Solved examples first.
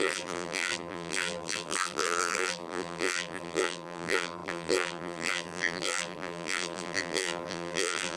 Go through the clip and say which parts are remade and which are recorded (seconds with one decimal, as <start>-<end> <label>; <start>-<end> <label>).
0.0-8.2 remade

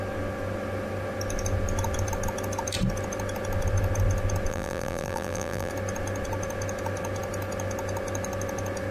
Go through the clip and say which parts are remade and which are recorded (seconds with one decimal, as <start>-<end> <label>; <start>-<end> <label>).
0.0-4.5 recorded; 4.5-5.7 remade; 5.7-8.9 recorded

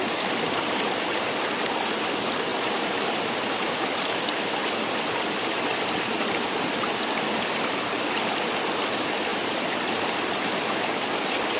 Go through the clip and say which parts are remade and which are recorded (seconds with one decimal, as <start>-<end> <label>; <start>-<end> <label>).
0.0-2.5 recorded; 2.5-3.7 remade; 3.7-9.3 recorded; 9.3-10.0 remade; 10.0-11.6 recorded